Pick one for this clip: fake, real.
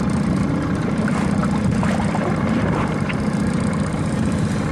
fake